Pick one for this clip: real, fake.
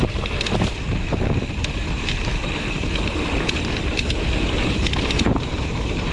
fake